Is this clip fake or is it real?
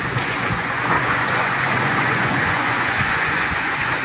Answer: fake